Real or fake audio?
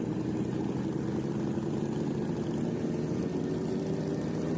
real